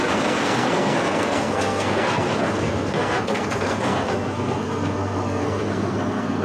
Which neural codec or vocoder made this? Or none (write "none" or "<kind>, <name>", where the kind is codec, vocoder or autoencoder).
codec, SNAC